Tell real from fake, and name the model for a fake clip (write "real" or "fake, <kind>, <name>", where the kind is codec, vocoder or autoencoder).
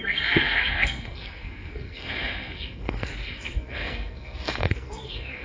fake, codec, SNAC